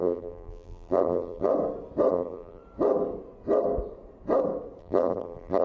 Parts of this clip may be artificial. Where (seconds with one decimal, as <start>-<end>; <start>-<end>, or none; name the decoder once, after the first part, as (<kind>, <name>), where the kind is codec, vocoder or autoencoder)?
0.0-1.5 (vocoder, BigVGAN v2); 2.1-2.6; 4.8-5.6